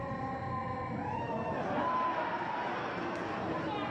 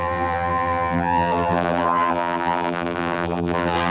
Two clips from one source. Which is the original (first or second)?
first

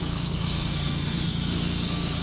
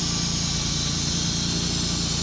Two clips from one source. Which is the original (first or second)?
second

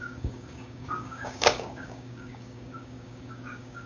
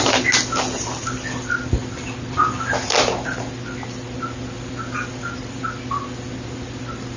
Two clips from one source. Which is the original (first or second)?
second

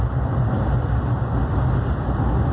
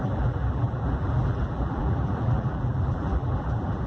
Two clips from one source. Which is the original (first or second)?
first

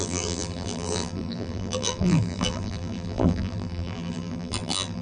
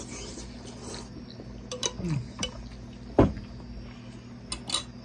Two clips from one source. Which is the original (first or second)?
second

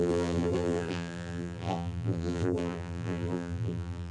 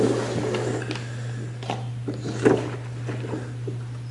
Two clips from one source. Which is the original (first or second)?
second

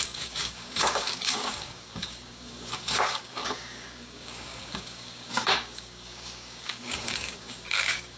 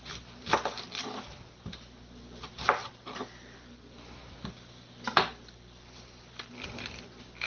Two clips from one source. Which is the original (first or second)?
second